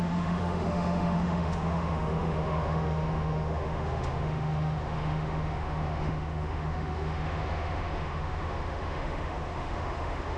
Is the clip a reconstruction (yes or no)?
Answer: yes